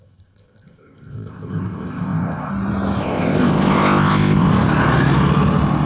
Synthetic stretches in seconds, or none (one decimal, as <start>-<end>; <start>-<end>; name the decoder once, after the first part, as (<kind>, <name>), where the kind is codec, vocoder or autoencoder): 0.0-2.5 (codec, ZipCodec); 3.0-4.5